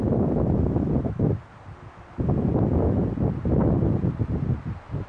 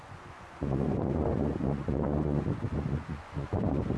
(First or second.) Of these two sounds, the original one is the first